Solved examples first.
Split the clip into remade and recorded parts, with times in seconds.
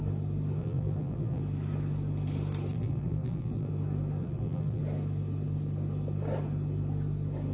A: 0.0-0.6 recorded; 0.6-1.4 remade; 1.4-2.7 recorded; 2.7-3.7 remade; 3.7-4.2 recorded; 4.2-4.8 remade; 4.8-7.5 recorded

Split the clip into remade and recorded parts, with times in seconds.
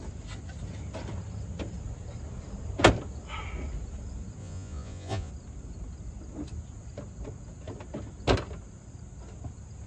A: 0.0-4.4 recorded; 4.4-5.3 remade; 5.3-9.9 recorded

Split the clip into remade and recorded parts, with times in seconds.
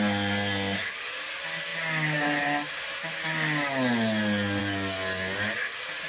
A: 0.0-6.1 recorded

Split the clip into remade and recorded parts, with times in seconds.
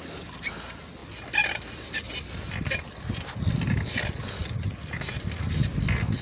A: 0.0-6.2 recorded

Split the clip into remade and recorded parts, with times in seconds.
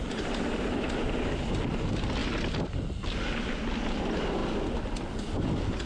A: 0.0-5.9 recorded